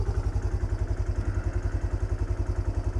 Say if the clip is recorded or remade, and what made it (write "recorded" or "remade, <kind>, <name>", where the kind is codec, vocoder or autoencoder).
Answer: recorded